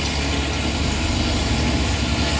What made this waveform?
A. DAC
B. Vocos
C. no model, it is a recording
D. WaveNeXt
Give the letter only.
C